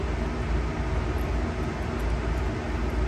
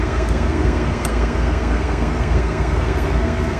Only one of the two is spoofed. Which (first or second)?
second